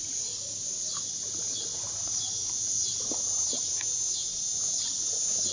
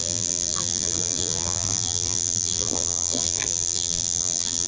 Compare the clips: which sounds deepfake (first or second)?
second